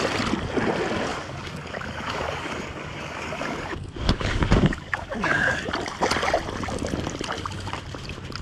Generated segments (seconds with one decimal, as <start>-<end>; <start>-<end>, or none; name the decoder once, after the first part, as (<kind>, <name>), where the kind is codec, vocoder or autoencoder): 1.1-5.7 (codec, DAC)